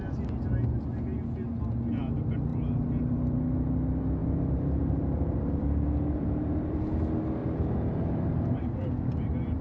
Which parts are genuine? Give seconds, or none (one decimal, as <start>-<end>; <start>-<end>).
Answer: 0.0-4.2; 6.8-7.4; 8.6-9.6